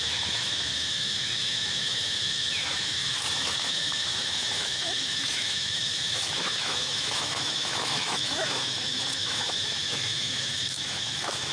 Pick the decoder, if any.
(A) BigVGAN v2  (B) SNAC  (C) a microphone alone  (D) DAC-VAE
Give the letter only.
D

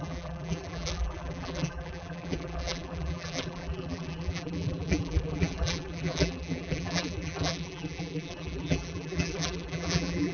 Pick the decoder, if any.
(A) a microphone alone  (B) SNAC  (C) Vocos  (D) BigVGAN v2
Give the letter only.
D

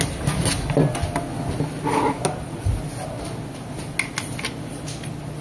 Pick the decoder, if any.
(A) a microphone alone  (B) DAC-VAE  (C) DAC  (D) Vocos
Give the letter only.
A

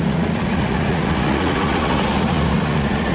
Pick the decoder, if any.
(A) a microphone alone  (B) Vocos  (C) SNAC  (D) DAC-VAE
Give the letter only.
B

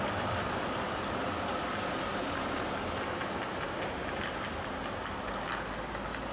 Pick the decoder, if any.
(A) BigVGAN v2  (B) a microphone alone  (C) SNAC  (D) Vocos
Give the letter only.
B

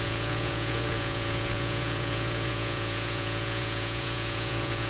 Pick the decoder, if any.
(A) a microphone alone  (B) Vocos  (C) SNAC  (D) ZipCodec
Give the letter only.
B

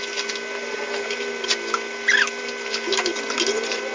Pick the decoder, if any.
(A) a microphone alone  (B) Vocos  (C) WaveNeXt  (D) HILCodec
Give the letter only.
A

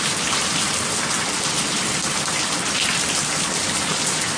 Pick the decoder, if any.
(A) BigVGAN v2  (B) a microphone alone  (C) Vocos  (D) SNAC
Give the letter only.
B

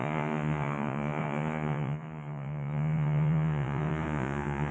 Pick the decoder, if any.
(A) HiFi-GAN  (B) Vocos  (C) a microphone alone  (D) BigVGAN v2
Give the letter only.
B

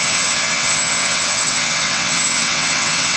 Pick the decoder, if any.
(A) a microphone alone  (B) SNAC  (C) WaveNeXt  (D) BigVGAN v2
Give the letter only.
C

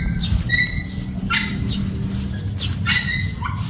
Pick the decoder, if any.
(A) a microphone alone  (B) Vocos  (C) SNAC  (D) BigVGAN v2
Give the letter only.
A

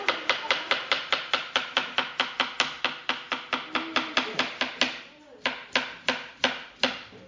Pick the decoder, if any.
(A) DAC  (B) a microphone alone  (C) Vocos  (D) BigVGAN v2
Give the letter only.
B